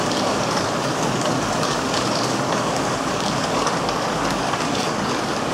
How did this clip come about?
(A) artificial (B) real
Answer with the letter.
A